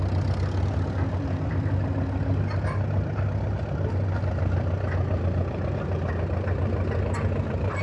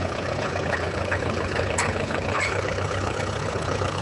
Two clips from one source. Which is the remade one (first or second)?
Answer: second